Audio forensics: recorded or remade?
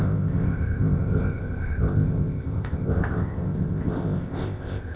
remade